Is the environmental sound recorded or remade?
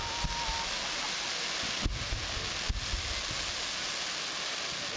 recorded